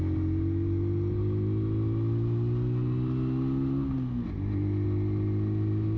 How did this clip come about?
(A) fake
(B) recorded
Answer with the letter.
B